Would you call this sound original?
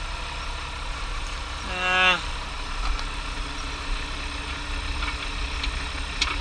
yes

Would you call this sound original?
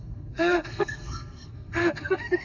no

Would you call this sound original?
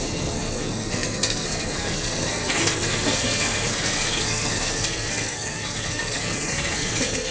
no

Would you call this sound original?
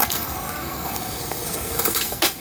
no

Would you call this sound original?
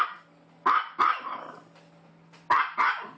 yes